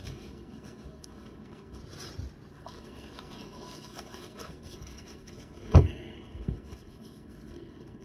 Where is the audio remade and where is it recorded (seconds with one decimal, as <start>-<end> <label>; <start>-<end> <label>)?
0.0-1.8 remade; 1.8-2.5 recorded; 2.5-8.0 remade